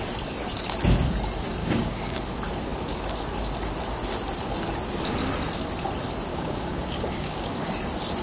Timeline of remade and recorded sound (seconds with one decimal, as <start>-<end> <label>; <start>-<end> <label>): 0.0-1.6 recorded; 1.6-2.2 remade; 2.2-6.3 recorded; 6.3-7.7 remade; 7.7-8.2 recorded